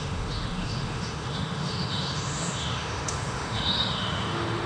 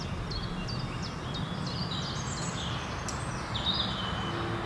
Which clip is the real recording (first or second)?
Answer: second